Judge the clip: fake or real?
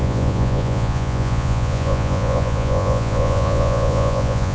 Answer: fake